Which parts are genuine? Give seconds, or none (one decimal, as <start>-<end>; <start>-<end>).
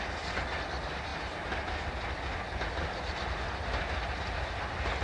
0.0-5.0